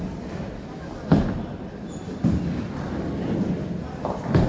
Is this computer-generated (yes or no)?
no